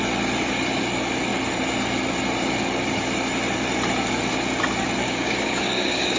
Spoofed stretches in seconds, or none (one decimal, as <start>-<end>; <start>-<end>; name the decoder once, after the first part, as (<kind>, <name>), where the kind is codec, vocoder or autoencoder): 5.0-6.2 (codec, DAC)